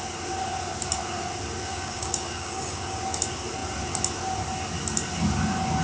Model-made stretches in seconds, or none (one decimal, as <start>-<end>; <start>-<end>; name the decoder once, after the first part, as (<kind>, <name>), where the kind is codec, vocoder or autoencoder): 1.7-3.0 (codec, DAC)